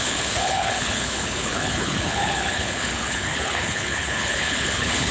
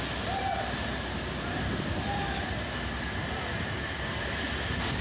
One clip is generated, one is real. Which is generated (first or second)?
first